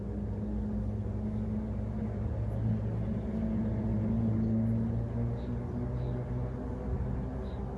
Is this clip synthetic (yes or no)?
no